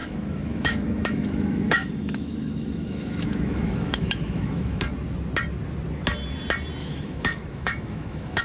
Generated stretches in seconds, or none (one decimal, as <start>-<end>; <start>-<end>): 0.0-4.8; 6.8-8.4